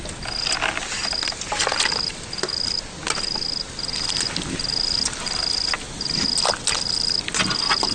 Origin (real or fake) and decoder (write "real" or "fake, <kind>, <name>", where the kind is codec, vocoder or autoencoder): real